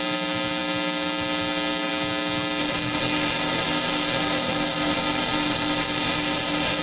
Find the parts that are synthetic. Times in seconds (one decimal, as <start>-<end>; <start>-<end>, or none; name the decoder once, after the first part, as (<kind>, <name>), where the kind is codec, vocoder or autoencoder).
2.6-6.8 (codec, SNAC)